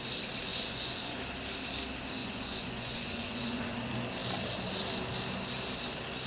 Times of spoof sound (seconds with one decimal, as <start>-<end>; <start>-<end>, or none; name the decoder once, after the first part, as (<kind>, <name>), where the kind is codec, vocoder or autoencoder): 0.5-1.2 (vocoder, Vocos); 2.2-3.6